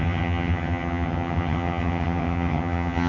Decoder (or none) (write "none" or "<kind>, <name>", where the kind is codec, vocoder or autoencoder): vocoder, HiFi-GAN